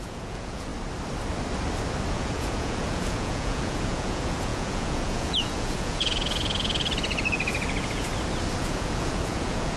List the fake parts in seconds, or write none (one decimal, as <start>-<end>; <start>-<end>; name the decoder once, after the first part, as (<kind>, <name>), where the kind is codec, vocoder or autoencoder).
0.0-0.7 (vocoder, Vocos); 2.1-8.1; 8.6-9.8